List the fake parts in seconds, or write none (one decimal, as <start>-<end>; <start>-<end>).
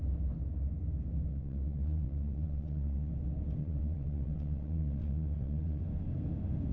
1.3-3.1; 3.6-5.8